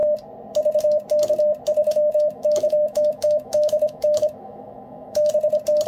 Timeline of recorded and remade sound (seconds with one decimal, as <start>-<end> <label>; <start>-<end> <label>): 0.0-1.8 recorded; 1.8-5.3 remade; 5.3-5.9 recorded